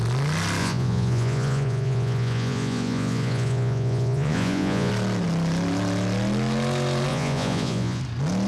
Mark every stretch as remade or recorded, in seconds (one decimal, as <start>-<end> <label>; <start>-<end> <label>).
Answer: 0.0-0.6 recorded; 0.6-4.9 remade; 4.9-7.1 recorded; 7.1-8.0 remade; 8.0-8.5 recorded